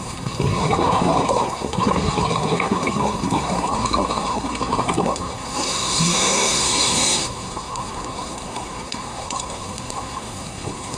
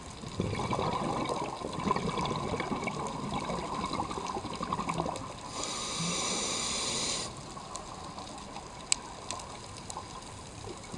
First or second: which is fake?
first